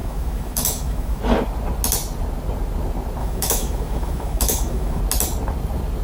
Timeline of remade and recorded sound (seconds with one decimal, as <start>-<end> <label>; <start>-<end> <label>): 0.0-1.2 remade; 1.2-3.2 recorded; 3.2-5.0 remade; 5.0-6.0 recorded